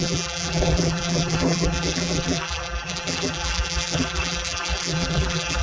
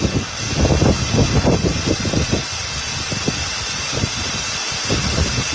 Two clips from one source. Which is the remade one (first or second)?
first